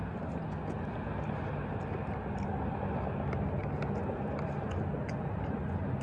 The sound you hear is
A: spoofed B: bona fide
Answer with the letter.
B